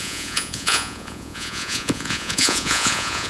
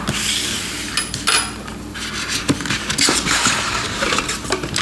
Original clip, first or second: second